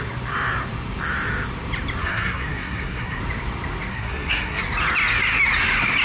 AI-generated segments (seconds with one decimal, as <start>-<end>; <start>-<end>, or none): 2.0-3.2; 3.9-4.6